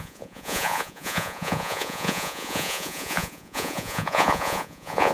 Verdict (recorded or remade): remade